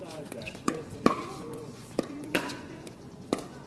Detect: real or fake fake